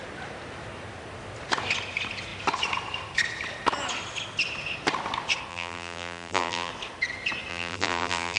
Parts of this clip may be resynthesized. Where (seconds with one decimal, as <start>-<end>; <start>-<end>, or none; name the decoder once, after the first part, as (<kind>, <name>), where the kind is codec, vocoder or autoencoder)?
5.5-6.7 (vocoder, BigVGAN v2); 7.5-8.4